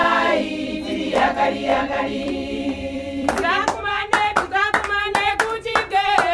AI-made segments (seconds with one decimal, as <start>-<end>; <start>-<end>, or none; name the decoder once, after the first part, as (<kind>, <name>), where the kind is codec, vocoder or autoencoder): 0.0-0.7 (vocoder, BigVGAN v2); 1.7-5.0